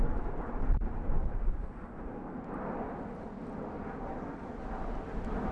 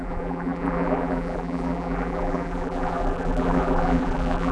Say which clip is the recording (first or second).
first